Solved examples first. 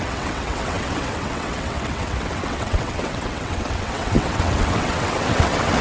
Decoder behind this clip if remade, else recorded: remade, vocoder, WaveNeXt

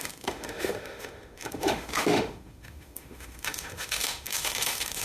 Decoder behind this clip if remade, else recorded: remade, autoencoder, DAC-VAE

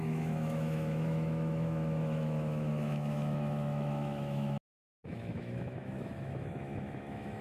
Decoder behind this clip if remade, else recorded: remade, autoencoder, DAC-VAE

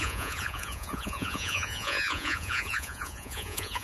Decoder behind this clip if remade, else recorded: remade, vocoder, Vocos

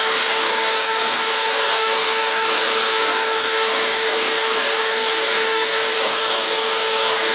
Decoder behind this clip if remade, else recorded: remade, codec, DAC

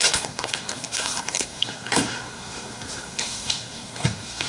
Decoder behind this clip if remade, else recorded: remade, codec, SNAC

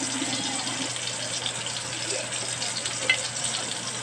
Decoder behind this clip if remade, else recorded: recorded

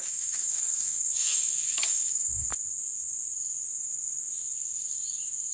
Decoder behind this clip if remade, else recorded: remade, autoencoder, DAC-VAE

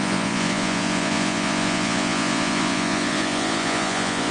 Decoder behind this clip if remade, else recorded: remade, vocoder, Vocos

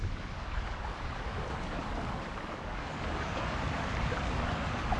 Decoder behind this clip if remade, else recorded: remade, codec, DAC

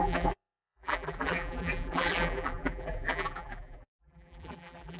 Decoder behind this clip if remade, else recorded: remade, vocoder, BigVGAN v2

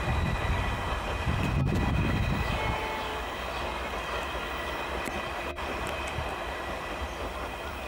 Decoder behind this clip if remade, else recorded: recorded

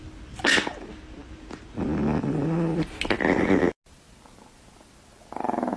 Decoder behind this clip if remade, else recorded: recorded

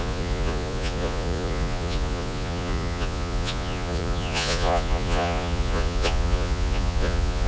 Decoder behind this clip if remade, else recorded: remade, vocoder, Vocos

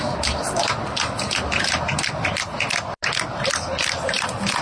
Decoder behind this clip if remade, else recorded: recorded